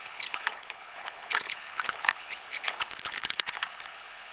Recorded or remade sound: remade